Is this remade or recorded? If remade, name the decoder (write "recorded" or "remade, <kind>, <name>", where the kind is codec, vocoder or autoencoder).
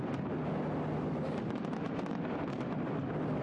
recorded